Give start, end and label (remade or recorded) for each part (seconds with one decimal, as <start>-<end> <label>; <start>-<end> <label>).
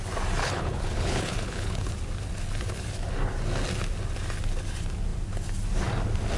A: 0.0-0.4 recorded; 0.4-1.9 remade; 1.9-6.4 recorded